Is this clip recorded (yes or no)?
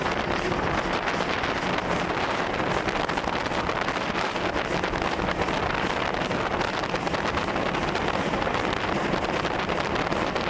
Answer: yes